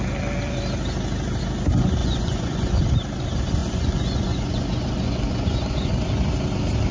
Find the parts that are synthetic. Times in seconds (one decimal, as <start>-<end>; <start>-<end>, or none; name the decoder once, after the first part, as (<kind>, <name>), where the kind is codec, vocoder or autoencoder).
2.0-2.8 (vocoder, Vocos); 3.6-5.9